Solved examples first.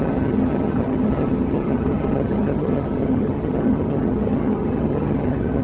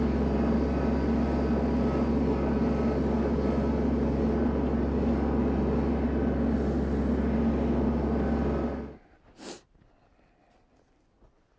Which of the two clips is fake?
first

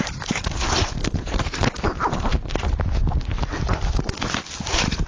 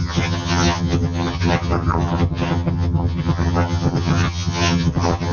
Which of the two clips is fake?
second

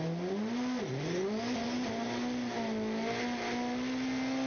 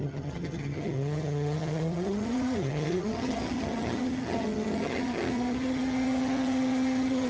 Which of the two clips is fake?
second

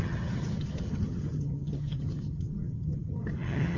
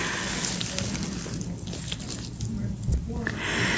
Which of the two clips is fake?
first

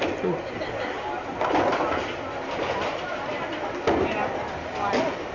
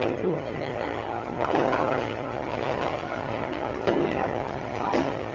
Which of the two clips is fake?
second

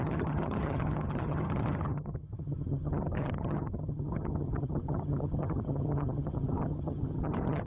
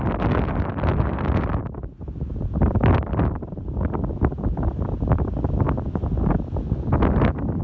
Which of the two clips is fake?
first